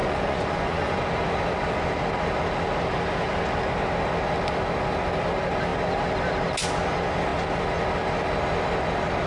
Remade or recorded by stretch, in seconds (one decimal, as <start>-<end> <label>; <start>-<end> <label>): 0.0-1.0 remade; 1.0-9.3 recorded